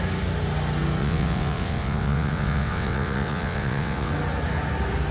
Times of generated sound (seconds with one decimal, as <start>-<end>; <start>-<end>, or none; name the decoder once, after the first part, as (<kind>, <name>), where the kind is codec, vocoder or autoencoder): 1.0-4.1 (vocoder, WaveNeXt)